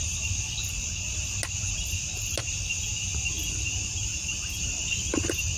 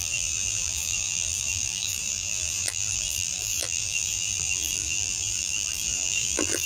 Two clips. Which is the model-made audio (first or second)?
second